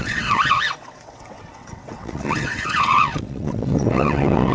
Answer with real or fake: fake